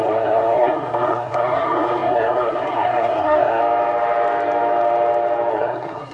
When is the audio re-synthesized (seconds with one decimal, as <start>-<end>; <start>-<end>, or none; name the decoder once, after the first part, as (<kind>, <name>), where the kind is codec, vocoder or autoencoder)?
0.0-3.6 (codec, SNAC); 5.5-6.1